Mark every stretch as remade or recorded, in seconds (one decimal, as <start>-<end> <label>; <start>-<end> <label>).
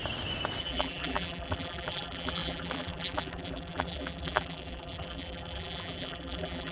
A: 0.0-0.6 recorded; 0.6-6.7 remade